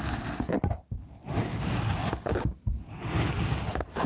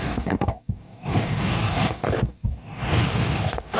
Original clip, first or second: first